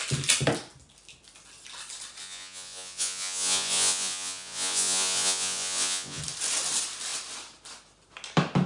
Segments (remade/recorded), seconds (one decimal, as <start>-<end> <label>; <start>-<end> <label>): 0.0-2.2 recorded; 2.2-6.2 remade; 6.2-8.7 recorded

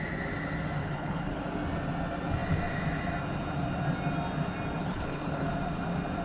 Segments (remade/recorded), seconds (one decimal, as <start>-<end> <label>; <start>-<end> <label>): 0.0-0.8 recorded; 0.8-1.4 remade; 1.4-4.8 recorded; 4.8-5.5 remade; 5.5-6.2 recorded

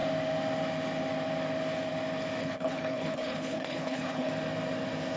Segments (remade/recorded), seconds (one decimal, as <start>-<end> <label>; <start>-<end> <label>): 0.0-2.4 recorded; 2.4-4.3 remade; 4.3-5.2 recorded

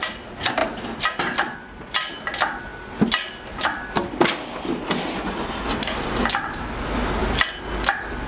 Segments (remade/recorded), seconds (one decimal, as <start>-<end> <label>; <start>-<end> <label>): 0.0-8.3 recorded

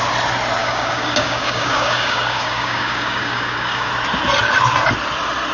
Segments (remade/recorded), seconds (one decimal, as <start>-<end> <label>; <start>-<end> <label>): 0.0-0.6 recorded; 0.6-3.9 remade; 3.9-5.5 recorded

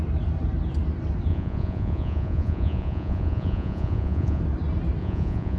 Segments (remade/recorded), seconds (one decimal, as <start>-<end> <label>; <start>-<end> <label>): 0.0-1.3 recorded; 1.3-4.4 remade; 4.4-5.0 recorded; 5.0-5.6 remade

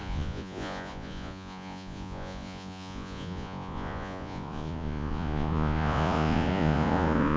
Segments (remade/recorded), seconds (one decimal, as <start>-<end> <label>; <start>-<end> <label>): 0.0-7.4 remade